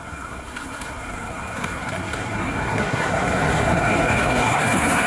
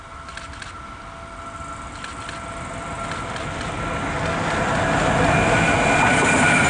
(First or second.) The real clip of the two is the second